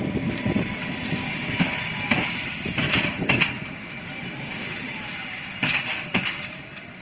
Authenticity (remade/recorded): remade